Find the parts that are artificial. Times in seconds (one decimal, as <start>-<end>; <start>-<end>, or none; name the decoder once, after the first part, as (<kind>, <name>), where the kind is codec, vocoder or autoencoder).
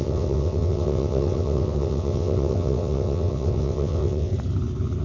0.0-4.3 (vocoder, WaveNeXt)